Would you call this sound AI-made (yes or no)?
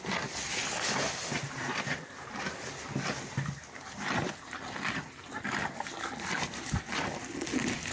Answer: no